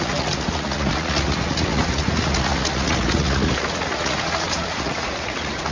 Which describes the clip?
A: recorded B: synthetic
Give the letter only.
B